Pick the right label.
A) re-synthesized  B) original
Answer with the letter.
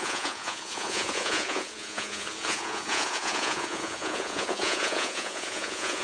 A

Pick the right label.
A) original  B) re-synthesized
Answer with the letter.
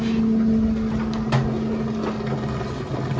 A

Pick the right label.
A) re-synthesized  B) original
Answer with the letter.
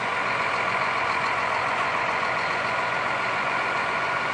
A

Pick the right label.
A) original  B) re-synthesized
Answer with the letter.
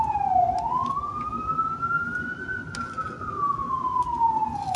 A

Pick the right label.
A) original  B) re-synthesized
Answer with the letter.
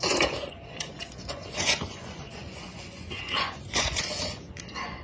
B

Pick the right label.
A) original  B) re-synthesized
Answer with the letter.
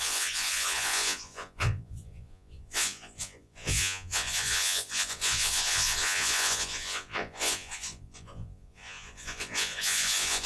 B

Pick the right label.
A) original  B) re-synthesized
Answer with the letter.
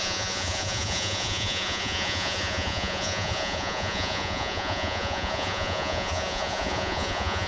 B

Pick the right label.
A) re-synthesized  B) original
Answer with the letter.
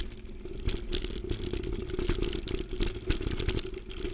B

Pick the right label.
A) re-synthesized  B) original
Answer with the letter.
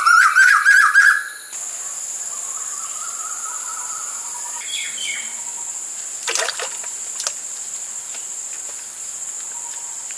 B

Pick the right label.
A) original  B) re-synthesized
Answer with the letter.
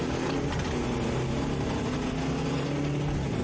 A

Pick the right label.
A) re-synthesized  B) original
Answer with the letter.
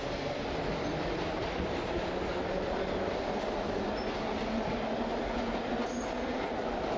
B